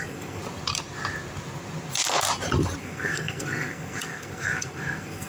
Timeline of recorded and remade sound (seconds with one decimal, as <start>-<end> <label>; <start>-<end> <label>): 0.0-0.4 remade; 0.4-2.8 recorded; 2.8-5.3 remade